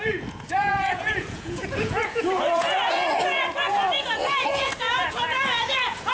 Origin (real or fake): fake